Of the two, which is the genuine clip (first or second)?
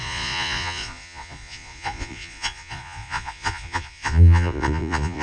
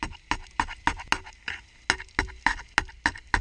second